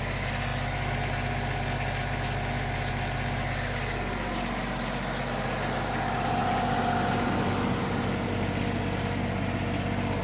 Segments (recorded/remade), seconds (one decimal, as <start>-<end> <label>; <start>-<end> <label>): 0.0-10.2 recorded